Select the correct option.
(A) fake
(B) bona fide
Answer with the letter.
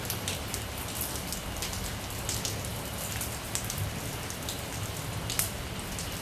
B